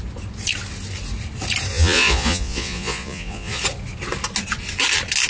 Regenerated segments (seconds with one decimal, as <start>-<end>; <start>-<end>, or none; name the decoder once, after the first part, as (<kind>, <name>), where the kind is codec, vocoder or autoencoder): 1.7-3.6 (vocoder, Vocos)